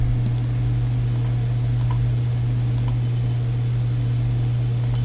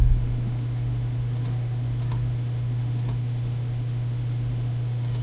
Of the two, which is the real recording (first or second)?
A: first